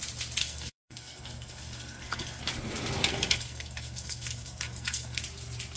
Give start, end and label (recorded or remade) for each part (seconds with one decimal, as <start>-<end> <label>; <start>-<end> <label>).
0.0-0.4 recorded; 0.4-2.4 remade; 2.4-3.1 recorded; 3.1-5.2 remade; 5.2-5.8 recorded